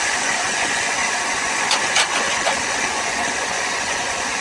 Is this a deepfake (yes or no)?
yes